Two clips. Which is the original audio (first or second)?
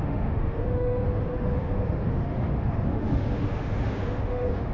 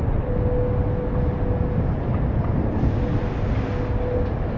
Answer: second